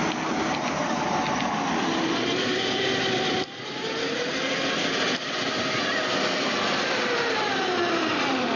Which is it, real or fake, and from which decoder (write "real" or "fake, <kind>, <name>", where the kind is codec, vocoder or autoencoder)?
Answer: real